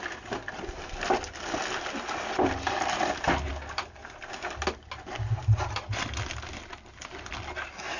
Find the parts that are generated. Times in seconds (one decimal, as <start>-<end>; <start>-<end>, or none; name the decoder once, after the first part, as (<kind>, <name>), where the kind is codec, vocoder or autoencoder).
none